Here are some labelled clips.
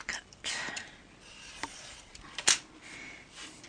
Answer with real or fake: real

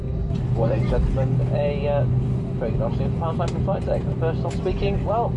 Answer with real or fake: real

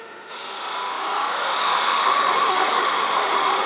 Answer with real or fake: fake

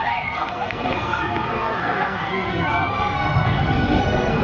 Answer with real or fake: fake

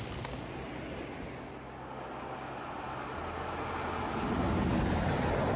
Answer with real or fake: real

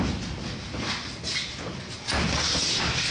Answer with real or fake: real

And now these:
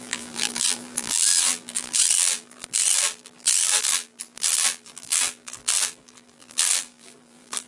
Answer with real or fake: fake